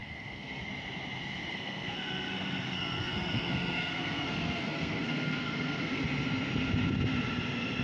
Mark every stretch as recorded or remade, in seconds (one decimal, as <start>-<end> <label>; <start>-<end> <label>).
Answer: 0.0-0.6 remade; 0.6-1.5 recorded; 1.5-6.0 remade; 6.0-7.8 recorded